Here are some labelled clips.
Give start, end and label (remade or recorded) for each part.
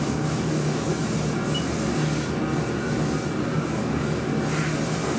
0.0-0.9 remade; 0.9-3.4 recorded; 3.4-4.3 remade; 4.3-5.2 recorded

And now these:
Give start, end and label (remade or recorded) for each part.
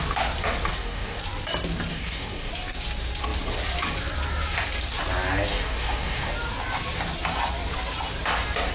0.0-0.7 recorded; 0.7-1.2 remade; 1.2-1.9 recorded; 1.9-2.5 remade; 2.5-5.5 recorded; 5.5-6.3 remade; 6.3-8.7 recorded